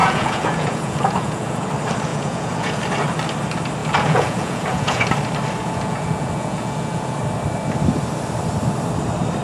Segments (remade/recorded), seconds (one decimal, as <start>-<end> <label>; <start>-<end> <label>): 0.0-1.7 remade; 1.7-2.1 recorded; 2.1-2.8 remade; 2.8-3.8 recorded; 3.8-5.1 remade; 5.1-5.6 recorded; 5.6-7.2 remade; 7.2-9.4 recorded